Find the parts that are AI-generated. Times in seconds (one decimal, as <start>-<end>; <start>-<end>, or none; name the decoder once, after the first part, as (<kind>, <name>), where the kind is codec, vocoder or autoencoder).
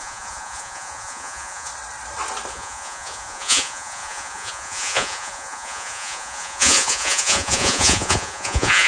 0.0-1.7 (vocoder, Vocos); 2.5-8.9